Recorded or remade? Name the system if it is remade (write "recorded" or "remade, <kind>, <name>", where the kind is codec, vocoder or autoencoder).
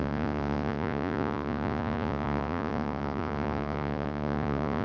remade, vocoder, Vocos